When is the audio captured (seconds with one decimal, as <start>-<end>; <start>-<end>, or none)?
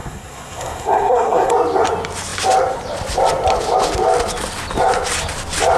1.5-5.8